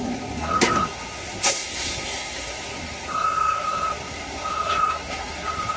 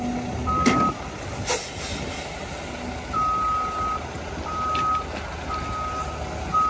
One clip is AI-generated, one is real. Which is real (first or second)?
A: second